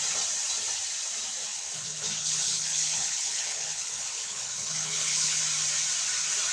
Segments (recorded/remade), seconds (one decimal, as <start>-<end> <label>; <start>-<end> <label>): 0.0-1.5 recorded; 1.5-5.4 remade; 5.4-6.5 recorded